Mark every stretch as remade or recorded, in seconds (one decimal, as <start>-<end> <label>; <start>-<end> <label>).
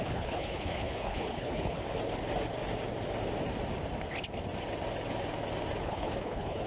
0.0-1.8 remade; 1.8-5.8 recorded; 5.8-6.7 remade